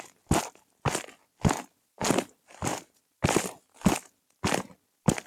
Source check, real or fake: real